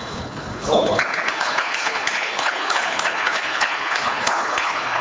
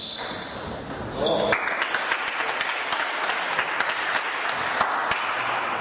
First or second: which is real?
second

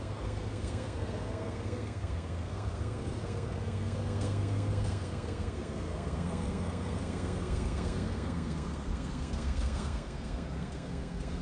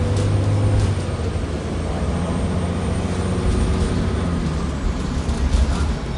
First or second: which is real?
second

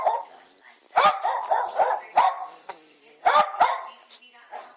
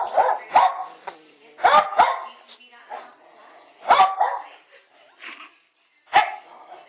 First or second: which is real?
second